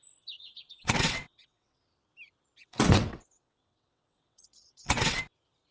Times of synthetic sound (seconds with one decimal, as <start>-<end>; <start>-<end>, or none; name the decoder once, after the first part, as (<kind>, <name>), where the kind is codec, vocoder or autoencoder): 0.4-1.8 (vocoder, WaveNeXt); 2.6-5.2